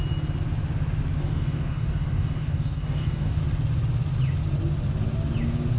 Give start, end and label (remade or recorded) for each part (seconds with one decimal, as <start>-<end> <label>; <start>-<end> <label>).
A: 0.0-1.2 recorded; 1.2-3.4 remade; 3.4-5.8 recorded